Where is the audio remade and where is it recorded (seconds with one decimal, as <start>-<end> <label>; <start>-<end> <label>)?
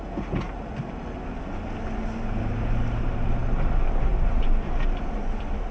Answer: 0.0-5.7 recorded